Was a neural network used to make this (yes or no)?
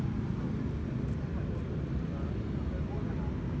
no